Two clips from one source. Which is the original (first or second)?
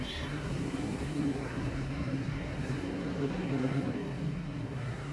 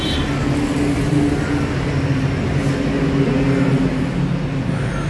second